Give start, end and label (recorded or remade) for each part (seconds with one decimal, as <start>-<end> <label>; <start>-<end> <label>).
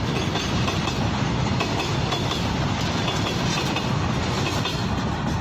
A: 0.0-1.9 recorded; 1.9-4.1 remade; 4.1-5.4 recorded